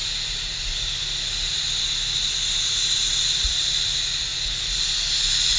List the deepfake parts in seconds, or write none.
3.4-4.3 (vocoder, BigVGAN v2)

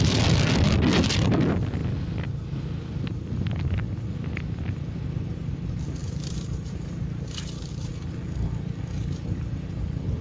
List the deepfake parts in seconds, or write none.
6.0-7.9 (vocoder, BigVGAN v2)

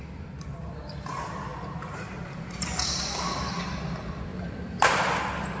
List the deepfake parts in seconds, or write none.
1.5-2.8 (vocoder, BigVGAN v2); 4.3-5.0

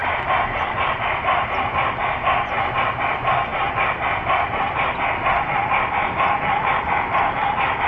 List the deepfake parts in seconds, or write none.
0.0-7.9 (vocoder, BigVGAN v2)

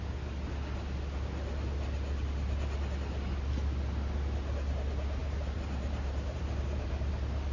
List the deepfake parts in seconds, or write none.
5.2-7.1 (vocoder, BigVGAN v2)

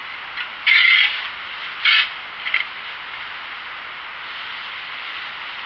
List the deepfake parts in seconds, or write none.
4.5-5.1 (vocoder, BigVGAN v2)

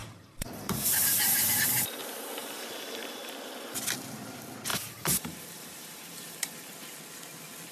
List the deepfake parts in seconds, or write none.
0.0-2.0 (vocoder, BigVGAN v2); 2.4-3.3; 4.7-6.7

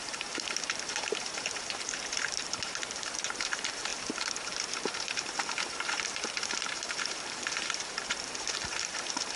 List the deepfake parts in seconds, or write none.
0.0-9.4 (vocoder, BigVGAN v2)